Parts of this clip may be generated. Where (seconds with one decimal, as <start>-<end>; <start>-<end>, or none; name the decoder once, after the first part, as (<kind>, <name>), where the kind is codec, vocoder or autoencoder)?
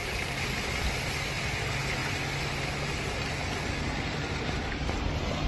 none